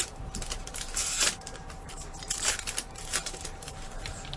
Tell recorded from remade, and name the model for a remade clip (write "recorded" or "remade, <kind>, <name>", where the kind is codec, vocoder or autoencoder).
remade, vocoder, BigVGAN v2